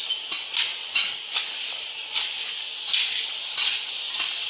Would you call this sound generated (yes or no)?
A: no